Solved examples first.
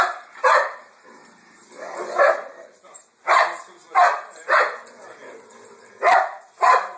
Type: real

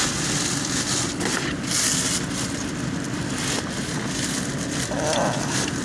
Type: real